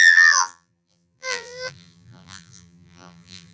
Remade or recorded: remade